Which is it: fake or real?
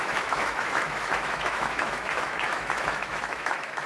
fake